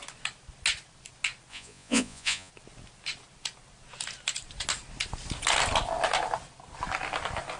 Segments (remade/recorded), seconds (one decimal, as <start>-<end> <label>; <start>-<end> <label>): 0.0-1.5 recorded; 1.5-2.5 remade; 2.5-7.6 recorded